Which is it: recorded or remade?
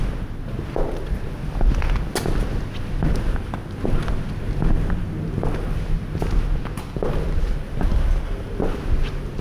recorded